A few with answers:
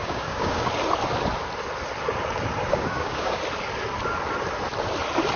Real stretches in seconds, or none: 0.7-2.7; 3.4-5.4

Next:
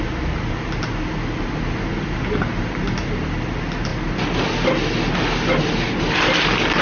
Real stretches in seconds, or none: 0.0-6.8

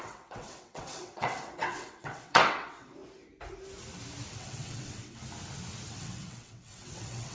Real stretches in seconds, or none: 3.0-4.3; 5.2-5.9

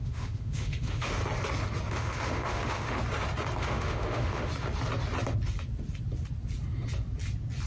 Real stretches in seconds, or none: 1.2-1.9; 3.0-3.6; 4.5-7.7

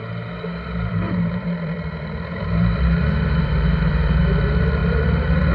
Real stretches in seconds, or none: 0.0-0.9; 4.2-4.8

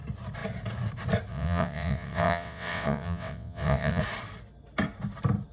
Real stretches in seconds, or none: 0.0-1.3; 4.0-5.5